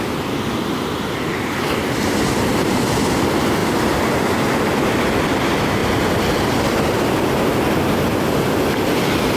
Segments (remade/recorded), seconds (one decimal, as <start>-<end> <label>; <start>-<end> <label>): 0.0-9.4 recorded